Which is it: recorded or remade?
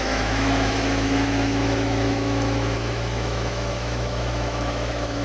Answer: remade